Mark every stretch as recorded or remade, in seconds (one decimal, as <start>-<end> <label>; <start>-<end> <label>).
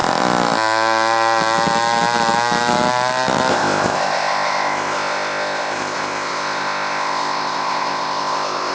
0.0-3.5 recorded; 3.5-8.7 remade